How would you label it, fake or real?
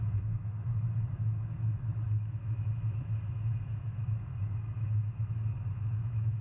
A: fake